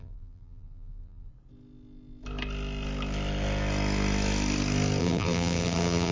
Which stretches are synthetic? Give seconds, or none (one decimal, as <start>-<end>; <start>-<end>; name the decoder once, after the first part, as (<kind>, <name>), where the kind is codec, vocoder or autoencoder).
0.0-1.3 (vocoder, BigVGAN v2); 5.0-6.1